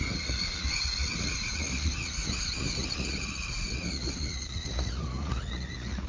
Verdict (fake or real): fake